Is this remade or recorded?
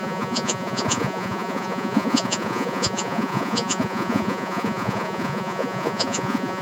remade